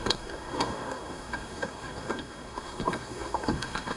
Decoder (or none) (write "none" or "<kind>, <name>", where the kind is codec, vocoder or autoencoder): codec, SNAC